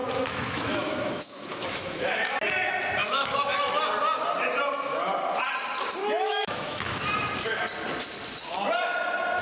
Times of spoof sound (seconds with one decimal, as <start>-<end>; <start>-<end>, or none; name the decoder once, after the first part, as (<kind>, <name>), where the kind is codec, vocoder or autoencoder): 0.0-2.3 (autoencoder, DAC-VAE); 3.0-3.8; 6.0-7.0

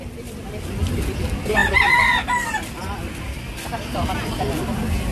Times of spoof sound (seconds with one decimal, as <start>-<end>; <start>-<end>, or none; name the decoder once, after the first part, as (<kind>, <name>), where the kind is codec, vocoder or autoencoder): none

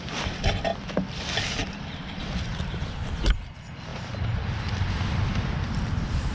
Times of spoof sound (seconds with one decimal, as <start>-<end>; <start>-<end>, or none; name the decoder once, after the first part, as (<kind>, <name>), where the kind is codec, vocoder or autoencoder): 0.0-0.7 (vocoder, BigVGAN v2); 2.2-3.9; 4.5-6.3

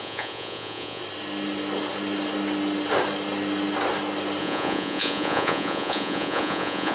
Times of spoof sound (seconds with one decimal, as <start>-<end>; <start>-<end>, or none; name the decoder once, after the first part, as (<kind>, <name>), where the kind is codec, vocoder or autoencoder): 0.0-1.0 (vocoder, Vocos); 4.4-6.9

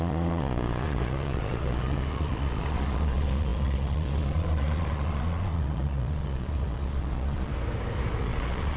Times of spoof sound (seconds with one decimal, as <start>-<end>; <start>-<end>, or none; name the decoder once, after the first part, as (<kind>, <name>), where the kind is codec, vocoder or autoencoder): 0.0-7.5 (vocoder, Vocos); 8.2-8.8

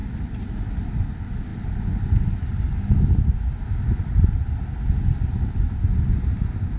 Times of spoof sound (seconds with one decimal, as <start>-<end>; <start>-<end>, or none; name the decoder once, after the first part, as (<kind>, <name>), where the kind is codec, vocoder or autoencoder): none